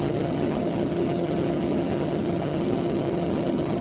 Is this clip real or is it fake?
fake